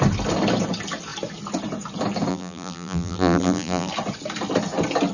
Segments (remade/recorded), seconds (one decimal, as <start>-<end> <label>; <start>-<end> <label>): 0.0-2.3 recorded; 2.3-3.9 remade; 3.9-5.1 recorded